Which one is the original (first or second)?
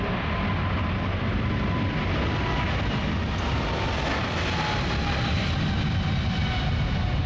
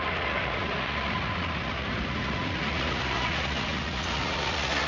first